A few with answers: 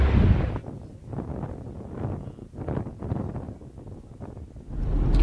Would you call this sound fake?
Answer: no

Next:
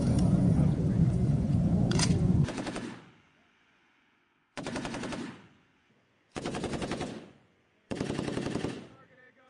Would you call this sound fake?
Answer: yes